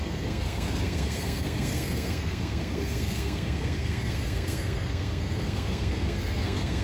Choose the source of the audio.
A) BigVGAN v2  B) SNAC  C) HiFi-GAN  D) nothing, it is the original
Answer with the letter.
B